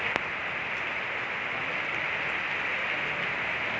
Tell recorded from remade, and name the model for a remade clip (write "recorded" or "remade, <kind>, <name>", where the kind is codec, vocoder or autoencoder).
recorded